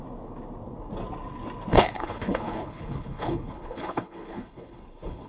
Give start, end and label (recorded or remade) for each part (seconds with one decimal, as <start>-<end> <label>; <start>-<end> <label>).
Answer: 0.0-1.7 recorded; 1.7-5.3 remade